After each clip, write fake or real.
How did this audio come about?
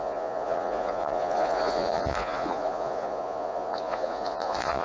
fake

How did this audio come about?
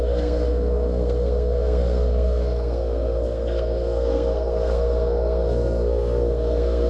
fake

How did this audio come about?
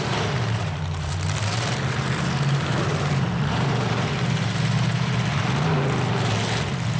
fake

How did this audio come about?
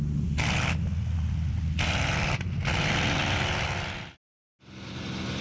real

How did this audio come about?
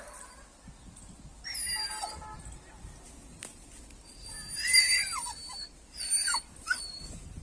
real